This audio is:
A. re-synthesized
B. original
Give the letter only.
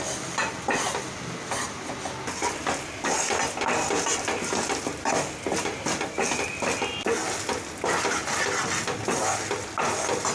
B